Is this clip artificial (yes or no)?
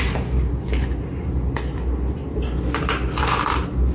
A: no